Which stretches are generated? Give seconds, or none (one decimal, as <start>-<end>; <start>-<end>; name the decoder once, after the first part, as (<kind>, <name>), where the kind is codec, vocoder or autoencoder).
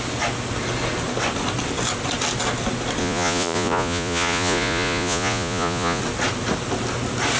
3.0-6.0 (vocoder, Vocos)